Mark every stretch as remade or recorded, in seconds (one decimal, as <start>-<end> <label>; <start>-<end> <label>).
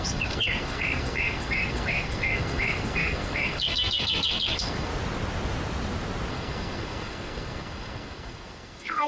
0.0-4.9 remade; 4.9-6.3 recorded; 6.3-9.1 remade